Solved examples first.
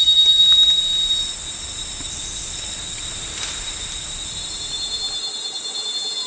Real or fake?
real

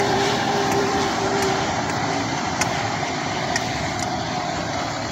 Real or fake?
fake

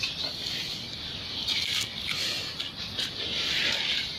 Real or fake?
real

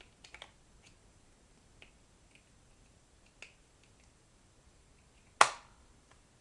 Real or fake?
real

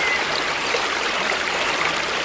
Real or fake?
fake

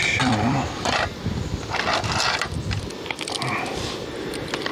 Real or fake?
fake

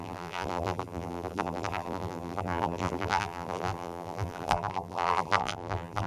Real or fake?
fake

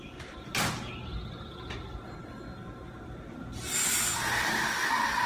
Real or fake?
real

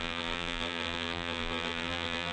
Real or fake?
fake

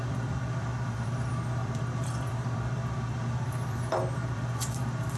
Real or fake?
fake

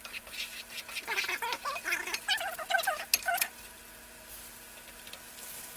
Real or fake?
real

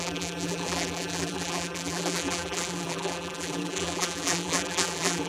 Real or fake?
fake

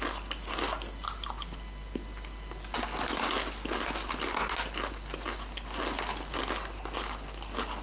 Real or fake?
real